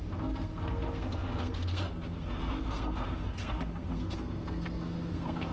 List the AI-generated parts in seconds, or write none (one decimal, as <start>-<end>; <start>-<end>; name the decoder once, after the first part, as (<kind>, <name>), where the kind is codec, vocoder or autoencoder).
0.0-5.5 (codec, SNAC)